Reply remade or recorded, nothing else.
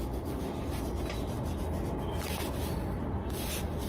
recorded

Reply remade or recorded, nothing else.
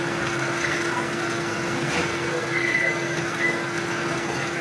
remade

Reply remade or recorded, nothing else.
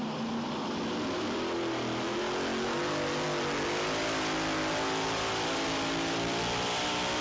recorded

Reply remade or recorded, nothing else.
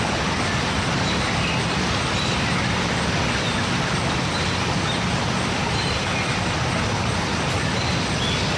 recorded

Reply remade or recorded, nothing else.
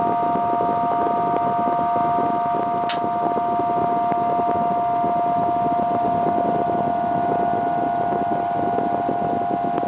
recorded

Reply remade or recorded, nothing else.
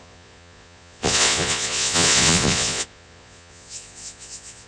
remade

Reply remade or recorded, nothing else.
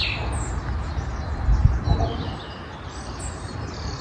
recorded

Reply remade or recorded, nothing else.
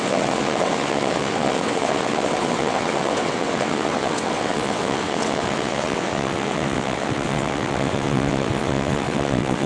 remade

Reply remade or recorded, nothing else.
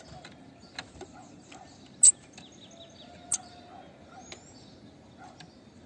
recorded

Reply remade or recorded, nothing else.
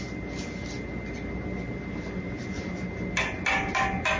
recorded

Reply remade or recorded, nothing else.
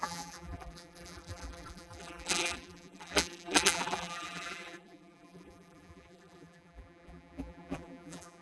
remade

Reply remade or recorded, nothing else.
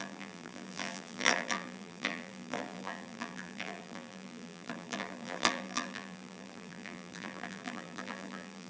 remade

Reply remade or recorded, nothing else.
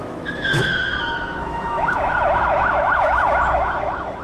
remade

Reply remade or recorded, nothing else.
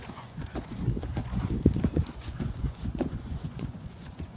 remade